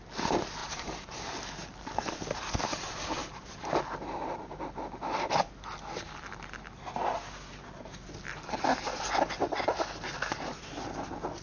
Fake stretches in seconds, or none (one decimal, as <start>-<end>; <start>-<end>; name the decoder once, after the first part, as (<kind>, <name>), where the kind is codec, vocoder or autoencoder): 0.6-1.3 (vocoder, BigVGAN v2); 3.2-3.8

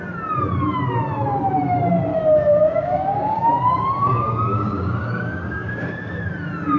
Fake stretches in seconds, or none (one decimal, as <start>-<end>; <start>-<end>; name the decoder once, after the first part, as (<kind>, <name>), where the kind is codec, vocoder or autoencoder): 2.1-6.2 (codec, DAC)

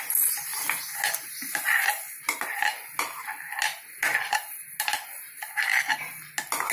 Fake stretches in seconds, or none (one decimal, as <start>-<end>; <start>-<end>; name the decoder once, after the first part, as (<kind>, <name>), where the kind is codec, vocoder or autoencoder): none